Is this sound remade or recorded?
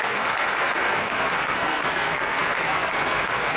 remade